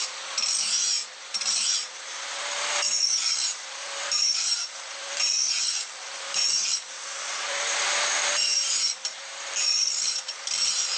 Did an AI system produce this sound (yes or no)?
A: yes